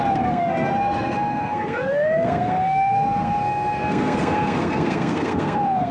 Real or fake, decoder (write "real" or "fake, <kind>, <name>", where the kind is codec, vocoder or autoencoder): fake, codec, SNAC